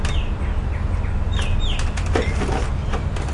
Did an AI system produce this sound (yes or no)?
no